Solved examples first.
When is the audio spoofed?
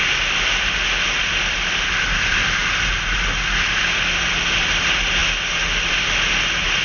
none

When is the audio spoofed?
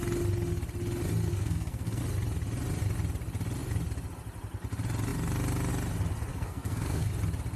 1.3-2.0 (codec, SNAC); 6.3-7.1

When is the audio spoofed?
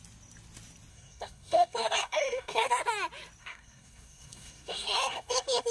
0.9-2.8 (codec, SNAC); 3.4-5.7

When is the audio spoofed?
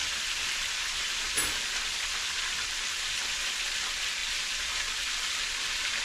none